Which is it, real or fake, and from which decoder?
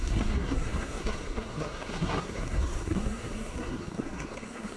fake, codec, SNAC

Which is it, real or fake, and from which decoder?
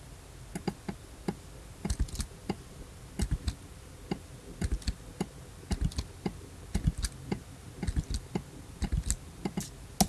real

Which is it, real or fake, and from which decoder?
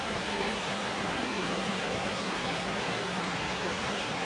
fake, codec, SNAC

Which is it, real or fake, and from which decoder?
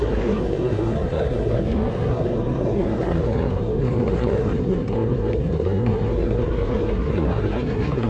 fake, codec, SNAC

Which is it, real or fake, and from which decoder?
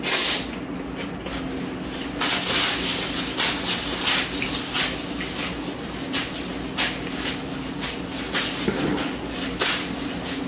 real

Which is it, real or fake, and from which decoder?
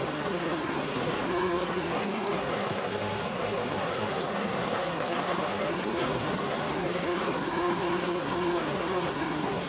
fake, codec, SNAC